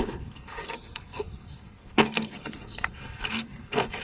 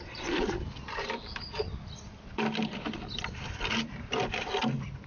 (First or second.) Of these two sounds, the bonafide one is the second